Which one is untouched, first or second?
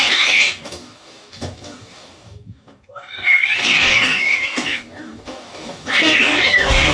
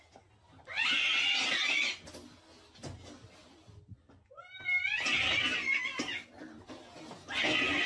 second